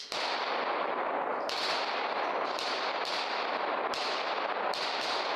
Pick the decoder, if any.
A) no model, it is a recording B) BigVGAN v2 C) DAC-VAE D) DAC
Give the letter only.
A